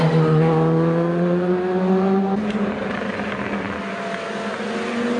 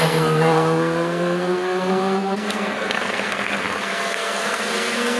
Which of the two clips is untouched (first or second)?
first